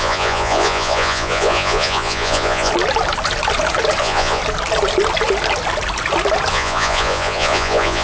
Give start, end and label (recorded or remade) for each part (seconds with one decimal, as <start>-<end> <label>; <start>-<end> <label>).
0.0-2.7 remade; 2.7-4.0 recorded; 4.0-4.4 remade; 4.4-6.5 recorded; 6.5-8.0 remade